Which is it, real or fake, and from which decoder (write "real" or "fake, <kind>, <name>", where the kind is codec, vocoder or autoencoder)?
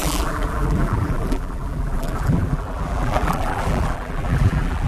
fake, vocoder, BigVGAN v2